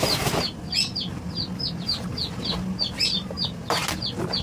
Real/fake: real